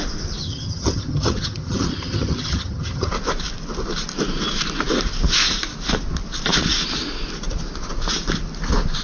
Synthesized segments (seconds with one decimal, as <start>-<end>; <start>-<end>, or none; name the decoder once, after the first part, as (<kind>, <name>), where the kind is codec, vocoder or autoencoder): 0.4-3.1 (vocoder, HiFi-GAN)